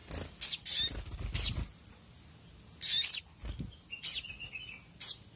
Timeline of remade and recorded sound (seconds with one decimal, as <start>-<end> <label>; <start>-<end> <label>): 0.0-5.4 recorded